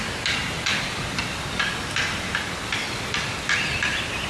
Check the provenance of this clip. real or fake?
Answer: real